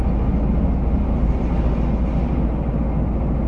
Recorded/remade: recorded